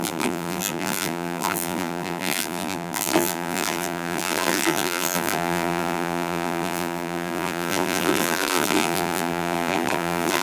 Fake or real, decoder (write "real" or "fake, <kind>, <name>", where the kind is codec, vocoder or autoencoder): fake, vocoder, BigVGAN v2